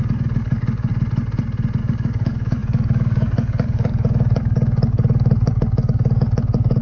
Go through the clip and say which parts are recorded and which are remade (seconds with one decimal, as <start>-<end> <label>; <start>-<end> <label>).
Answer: 0.0-0.9 remade; 0.9-1.8 recorded; 1.8-6.8 remade